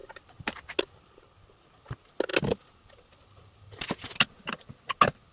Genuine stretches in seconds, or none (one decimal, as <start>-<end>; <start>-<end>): 0.0-5.3